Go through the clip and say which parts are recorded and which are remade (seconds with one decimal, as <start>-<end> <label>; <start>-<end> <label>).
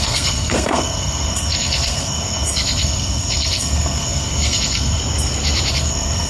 0.0-5.0 remade; 5.0-5.7 recorded; 5.7-6.3 remade